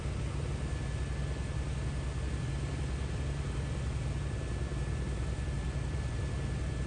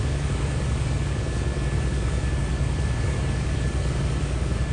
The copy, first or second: second